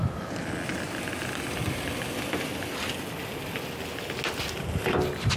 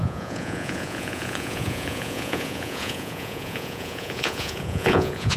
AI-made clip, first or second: second